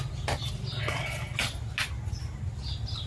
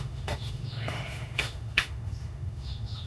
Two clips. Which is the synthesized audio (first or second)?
second